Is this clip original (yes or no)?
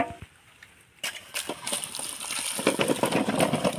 yes